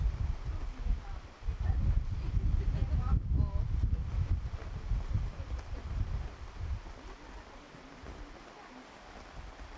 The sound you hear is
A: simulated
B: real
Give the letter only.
B